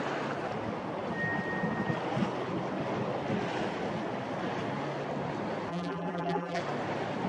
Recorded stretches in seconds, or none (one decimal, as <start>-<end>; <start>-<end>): 0.0-5.7; 6.6-7.3